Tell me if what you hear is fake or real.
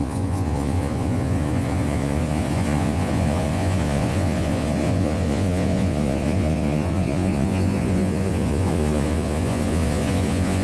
fake